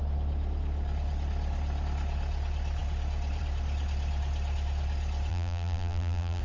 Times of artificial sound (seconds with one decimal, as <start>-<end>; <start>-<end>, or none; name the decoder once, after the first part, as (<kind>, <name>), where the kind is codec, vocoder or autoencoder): 5.3-6.4 (vocoder, BigVGAN v2)